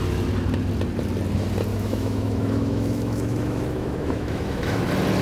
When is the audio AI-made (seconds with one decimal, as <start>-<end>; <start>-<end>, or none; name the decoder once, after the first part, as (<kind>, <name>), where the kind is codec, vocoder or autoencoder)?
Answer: 1.7-4.8 (autoencoder, DAC-VAE)